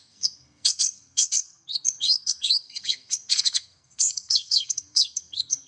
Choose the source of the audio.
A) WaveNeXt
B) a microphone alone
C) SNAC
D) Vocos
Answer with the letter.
C